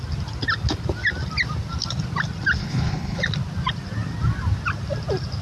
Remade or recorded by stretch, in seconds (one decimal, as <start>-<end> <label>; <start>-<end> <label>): 0.0-2.6 recorded; 2.6-3.2 remade; 3.2-5.4 recorded